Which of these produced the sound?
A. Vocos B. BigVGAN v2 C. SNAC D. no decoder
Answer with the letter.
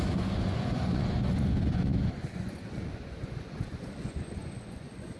A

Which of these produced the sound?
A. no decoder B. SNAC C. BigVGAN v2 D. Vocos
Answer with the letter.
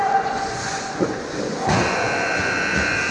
D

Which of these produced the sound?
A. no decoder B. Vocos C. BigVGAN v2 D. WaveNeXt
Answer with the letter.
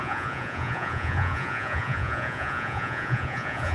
B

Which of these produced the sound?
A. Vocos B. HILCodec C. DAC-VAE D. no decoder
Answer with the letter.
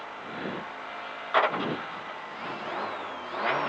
D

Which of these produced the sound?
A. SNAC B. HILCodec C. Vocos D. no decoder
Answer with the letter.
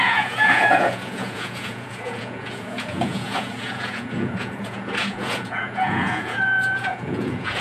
C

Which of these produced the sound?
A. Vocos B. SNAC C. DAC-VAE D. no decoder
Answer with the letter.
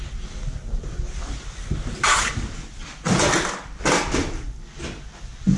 D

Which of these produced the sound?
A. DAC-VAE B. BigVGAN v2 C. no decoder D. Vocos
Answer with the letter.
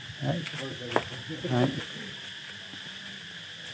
C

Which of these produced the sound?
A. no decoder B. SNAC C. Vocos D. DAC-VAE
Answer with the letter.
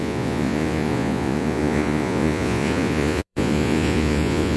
C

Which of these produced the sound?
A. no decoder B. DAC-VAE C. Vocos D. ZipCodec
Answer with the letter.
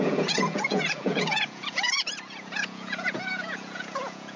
C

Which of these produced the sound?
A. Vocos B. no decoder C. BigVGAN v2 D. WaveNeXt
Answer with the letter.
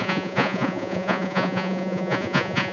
A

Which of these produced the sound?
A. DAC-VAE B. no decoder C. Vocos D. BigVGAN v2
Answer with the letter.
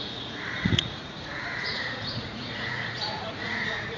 C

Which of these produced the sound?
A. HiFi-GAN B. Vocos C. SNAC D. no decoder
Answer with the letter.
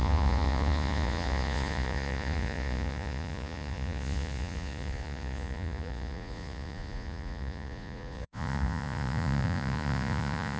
B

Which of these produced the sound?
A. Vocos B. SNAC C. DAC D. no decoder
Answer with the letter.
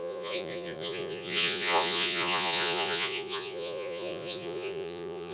A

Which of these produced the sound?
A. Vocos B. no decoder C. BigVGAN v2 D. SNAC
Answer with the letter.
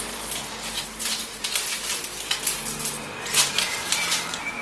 B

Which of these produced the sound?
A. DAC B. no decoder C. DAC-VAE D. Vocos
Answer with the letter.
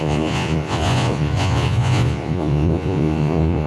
D